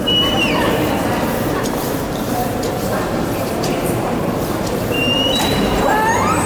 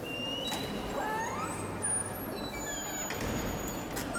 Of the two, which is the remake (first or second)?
first